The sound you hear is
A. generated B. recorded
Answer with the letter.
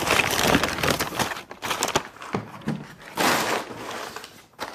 B